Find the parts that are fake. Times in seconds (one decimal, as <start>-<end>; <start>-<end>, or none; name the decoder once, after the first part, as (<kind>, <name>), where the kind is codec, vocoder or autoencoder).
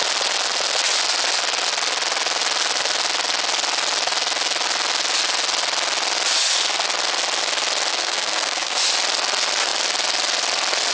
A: 7.9-8.8 (codec, SNAC)